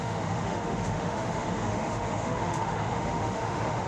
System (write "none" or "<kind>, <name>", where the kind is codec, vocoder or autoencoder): autoencoder, DAC-VAE